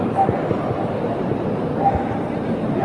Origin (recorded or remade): remade